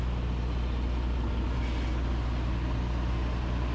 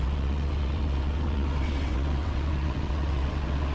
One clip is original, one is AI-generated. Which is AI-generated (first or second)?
second